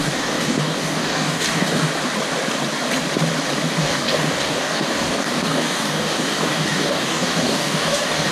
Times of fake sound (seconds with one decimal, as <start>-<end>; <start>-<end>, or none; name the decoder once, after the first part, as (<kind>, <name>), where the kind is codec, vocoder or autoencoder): 0.0-1.9 (codec, DAC); 3.8-8.3